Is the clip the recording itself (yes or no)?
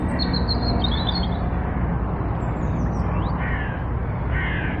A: yes